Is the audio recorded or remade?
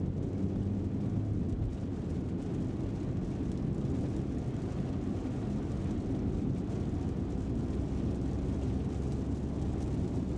recorded